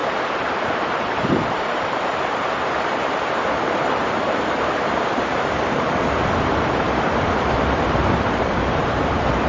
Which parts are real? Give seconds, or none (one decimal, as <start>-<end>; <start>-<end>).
0.0-0.6